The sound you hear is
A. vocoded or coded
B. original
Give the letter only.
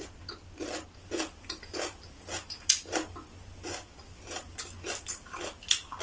B